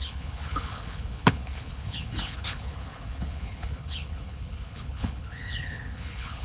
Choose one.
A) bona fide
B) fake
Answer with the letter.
B